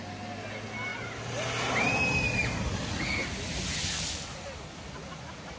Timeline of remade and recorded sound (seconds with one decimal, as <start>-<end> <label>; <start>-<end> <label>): 0.0-5.6 recorded